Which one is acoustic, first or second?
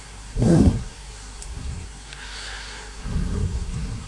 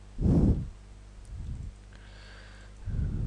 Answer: second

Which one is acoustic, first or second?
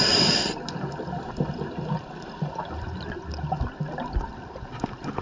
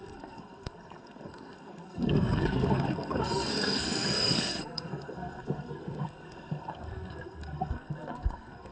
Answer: first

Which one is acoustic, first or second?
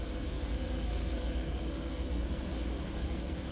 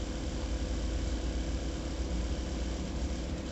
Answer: second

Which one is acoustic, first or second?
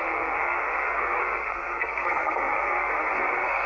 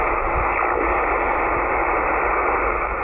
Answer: second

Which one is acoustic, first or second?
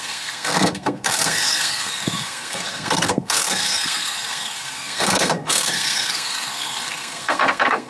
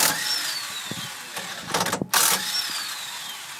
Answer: second